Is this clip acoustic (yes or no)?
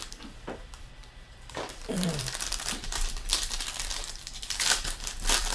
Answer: no